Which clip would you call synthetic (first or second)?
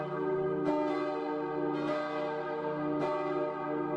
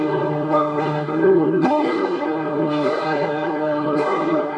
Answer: second